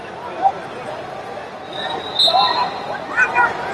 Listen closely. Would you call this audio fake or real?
real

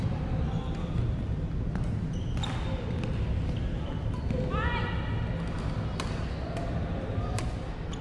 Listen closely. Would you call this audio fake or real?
real